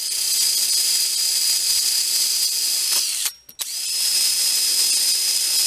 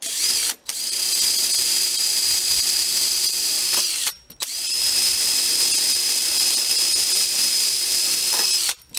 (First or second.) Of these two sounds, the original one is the first